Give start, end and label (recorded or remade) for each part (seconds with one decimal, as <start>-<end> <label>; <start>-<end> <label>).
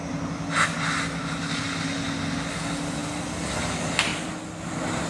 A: 0.0-3.0 recorded; 3.0-3.5 remade; 3.5-5.1 recorded